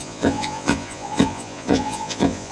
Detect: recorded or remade remade